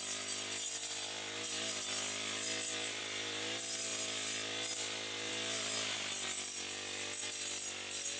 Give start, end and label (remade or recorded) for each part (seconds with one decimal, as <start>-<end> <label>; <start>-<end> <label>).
0.0-8.2 recorded